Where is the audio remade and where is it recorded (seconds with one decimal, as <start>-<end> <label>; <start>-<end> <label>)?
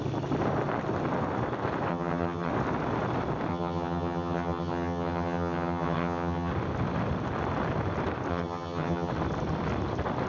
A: 0.0-1.9 recorded; 1.9-2.5 remade; 2.5-3.5 recorded; 3.5-6.5 remade; 6.5-8.3 recorded; 8.3-9.1 remade; 9.1-10.3 recorded